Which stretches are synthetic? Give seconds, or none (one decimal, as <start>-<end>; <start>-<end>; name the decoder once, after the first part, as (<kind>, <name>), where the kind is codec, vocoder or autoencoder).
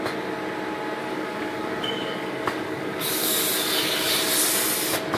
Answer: 1.0-4.1 (codec, DAC)